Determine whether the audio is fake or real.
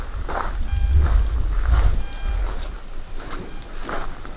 real